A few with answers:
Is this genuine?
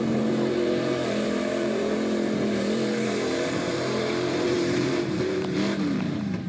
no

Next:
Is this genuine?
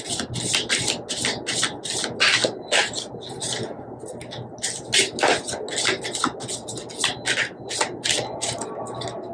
yes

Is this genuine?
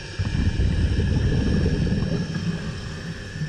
yes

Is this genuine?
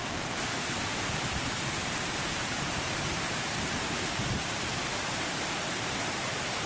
no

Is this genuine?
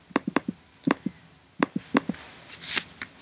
yes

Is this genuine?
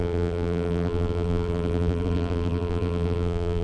no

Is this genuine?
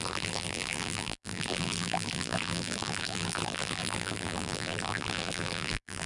no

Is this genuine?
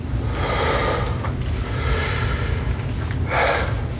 yes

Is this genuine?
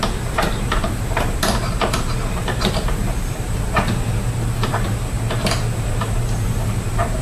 no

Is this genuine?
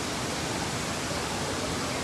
no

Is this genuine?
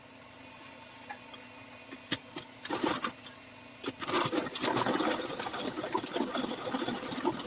yes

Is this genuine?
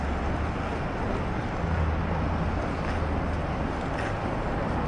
yes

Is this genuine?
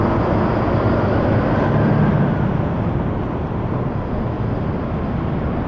yes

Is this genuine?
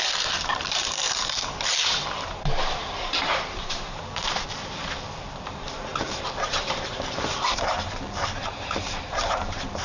no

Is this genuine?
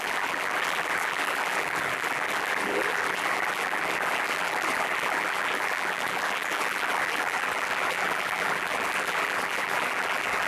no